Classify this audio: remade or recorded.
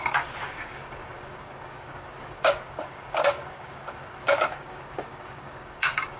remade